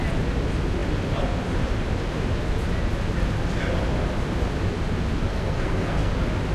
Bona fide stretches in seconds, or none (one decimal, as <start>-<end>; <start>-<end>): 0.0-5.3; 6.1-6.5